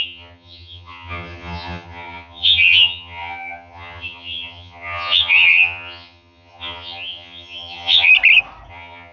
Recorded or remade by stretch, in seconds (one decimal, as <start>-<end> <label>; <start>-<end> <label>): 0.0-8.1 remade; 8.1-8.7 recorded; 8.7-9.1 remade